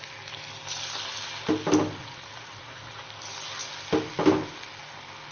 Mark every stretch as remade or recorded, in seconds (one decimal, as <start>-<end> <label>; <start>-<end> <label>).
0.0-2.0 recorded; 2.0-3.0 remade; 3.0-5.3 recorded